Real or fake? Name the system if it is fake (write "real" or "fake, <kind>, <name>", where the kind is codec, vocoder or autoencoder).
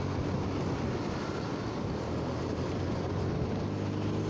real